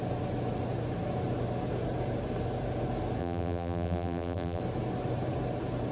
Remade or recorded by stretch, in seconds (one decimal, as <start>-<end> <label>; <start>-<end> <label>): 0.0-3.2 recorded; 3.2-4.6 remade; 4.6-5.9 recorded